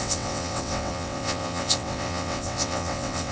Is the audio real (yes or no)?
no